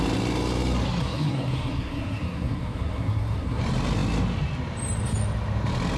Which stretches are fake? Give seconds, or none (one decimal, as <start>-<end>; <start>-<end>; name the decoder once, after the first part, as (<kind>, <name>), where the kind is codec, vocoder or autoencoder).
1.0-3.6 (codec, SNAC)